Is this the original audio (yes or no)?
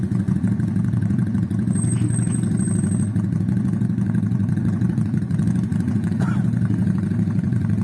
no